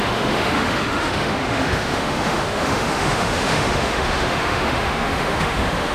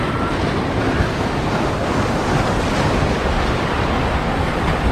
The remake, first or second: first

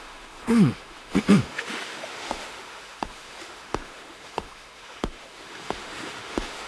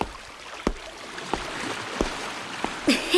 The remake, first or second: first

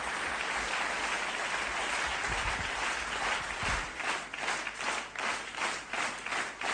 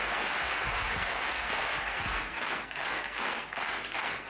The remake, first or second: second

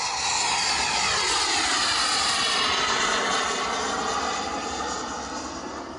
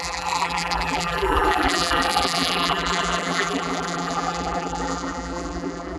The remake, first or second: second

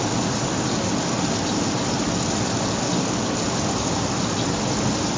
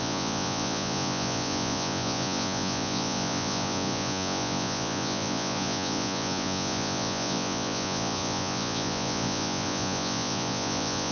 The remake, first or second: second